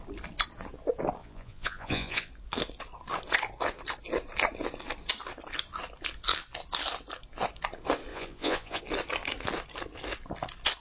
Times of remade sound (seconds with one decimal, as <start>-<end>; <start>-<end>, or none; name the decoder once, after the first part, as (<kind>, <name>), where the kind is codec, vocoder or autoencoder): 1.2-2.3 (vocoder, Vocos); 8.1-8.8